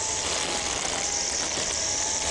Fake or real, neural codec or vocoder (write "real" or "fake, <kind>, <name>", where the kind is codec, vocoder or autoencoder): real